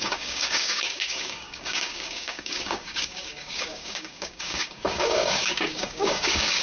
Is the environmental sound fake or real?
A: fake